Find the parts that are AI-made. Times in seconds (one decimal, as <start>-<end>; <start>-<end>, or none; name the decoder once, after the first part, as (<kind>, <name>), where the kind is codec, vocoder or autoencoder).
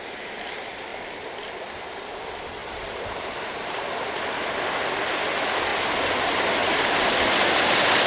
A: none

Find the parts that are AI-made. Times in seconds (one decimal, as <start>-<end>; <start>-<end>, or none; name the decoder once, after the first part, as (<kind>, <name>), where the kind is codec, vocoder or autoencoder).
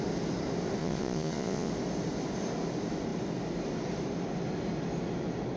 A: 0.8-1.7 (vocoder, Vocos)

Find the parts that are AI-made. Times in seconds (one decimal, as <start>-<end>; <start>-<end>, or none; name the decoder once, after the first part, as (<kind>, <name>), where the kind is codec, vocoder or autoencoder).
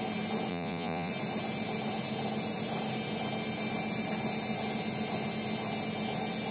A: 0.5-1.1 (vocoder, Vocos)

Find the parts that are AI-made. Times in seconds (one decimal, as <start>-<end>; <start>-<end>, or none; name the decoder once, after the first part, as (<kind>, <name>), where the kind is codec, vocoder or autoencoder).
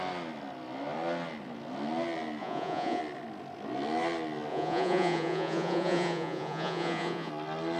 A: 2.4-3.0 (vocoder, Vocos); 4.5-7.3